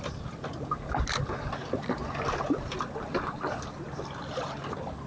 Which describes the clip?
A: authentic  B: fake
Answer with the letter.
A